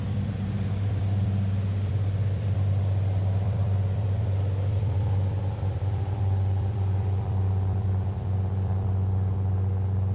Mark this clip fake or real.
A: fake